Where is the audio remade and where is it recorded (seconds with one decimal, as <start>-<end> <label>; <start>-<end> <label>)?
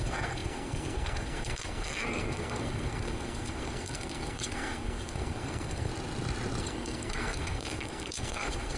0.0-5.9 remade; 5.9-6.6 recorded; 6.6-8.8 remade